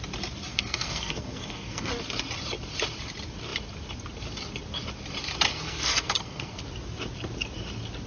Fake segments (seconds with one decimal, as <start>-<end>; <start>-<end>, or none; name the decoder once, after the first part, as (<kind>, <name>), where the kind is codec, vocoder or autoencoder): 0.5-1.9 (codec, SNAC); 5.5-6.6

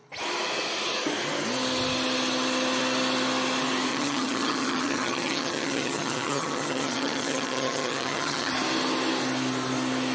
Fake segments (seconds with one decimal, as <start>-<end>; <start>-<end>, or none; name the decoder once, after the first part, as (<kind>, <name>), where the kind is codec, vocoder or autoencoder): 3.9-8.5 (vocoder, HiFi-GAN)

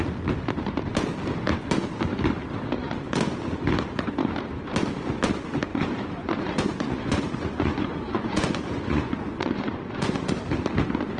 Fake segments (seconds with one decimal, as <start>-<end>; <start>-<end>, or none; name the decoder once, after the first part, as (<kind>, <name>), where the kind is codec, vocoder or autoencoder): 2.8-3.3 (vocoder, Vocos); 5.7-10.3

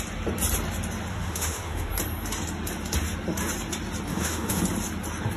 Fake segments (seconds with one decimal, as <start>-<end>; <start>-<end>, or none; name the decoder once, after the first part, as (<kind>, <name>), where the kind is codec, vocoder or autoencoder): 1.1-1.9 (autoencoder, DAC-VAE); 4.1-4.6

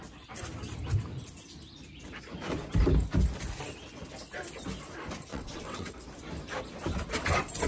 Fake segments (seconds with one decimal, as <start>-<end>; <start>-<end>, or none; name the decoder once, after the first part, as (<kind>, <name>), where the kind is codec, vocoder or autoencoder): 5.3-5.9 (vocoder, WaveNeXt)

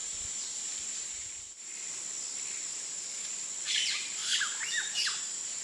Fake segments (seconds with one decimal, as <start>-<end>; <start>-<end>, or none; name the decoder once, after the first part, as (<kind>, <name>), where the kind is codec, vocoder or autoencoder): 0.0-1.7 (vocoder, BigVGAN v2); 2.6-5.6